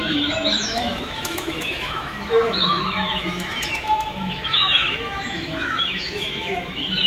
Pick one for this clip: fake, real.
fake